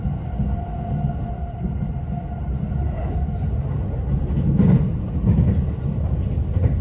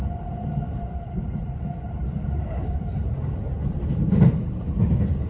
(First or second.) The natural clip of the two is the first